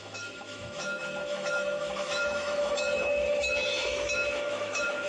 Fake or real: fake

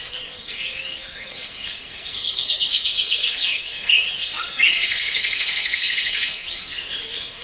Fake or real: fake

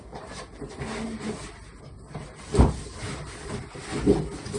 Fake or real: real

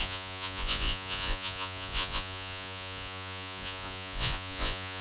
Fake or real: fake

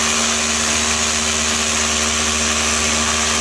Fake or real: real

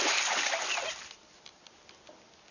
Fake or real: real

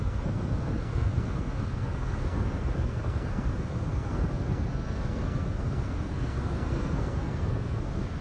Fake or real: fake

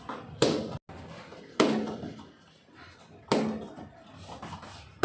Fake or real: real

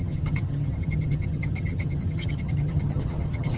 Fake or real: fake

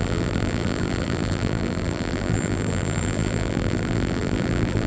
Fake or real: fake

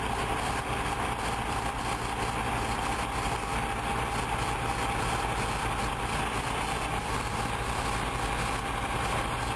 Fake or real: real